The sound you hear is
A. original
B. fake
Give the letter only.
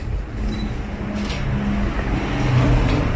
A